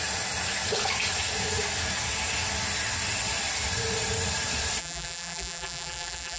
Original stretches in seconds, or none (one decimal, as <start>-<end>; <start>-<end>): 0.0-4.8